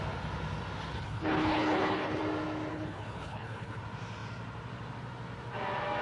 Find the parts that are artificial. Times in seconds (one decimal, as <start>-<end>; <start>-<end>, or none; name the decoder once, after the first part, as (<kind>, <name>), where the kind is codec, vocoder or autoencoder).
0.9-2.2 (codec, HILCodec); 2.7-3.8